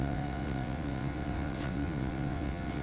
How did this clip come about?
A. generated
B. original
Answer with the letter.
A